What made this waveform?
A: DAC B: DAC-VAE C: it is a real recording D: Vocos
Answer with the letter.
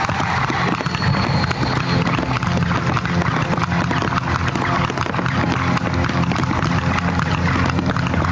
C